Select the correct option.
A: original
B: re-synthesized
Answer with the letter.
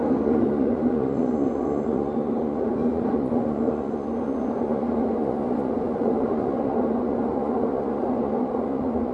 B